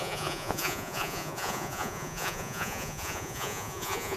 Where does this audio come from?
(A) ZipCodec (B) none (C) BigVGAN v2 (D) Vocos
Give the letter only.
D